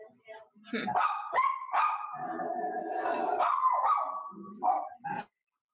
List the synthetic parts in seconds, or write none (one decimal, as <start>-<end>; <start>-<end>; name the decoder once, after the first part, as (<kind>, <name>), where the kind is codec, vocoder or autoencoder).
none